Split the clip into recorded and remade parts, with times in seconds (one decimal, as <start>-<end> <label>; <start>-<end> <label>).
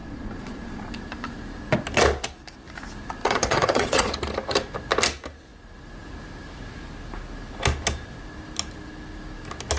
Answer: 0.0-0.9 remade; 0.9-3.2 recorded; 3.2-4.1 remade; 4.1-9.8 recorded